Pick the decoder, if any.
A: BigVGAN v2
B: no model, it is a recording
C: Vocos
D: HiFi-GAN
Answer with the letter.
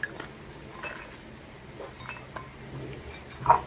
B